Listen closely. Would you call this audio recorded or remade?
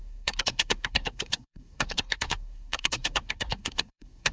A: remade